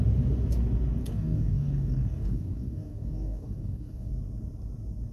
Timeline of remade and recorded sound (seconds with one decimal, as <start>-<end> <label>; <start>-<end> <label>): 0.0-1.0 recorded; 1.0-4.1 remade; 4.1-5.1 recorded